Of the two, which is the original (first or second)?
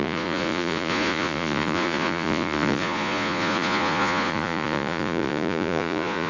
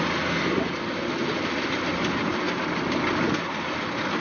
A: second